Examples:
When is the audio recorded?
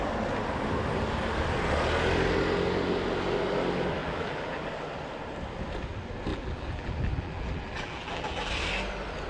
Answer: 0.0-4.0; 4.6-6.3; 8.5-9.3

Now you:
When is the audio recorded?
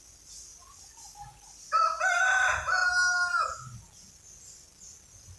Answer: 0.0-5.4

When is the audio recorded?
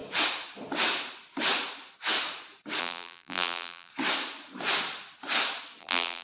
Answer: 0.0-2.8; 3.9-5.8